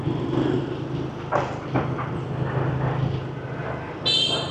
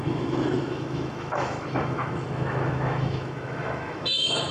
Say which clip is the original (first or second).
first